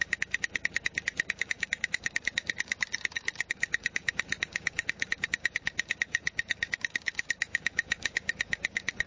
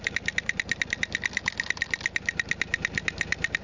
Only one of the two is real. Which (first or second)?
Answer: second